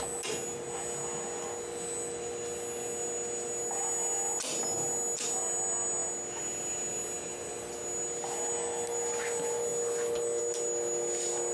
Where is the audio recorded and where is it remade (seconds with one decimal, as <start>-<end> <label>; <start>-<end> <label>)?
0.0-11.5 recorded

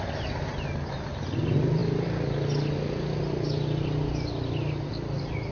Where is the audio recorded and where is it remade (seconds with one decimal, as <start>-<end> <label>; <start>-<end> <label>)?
0.0-5.5 recorded

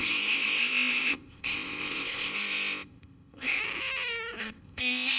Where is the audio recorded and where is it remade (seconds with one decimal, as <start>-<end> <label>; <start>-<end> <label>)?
0.0-3.6 remade; 3.6-4.4 recorded; 4.4-5.2 remade